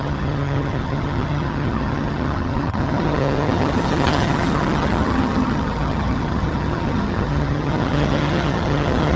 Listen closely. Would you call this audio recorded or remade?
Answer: remade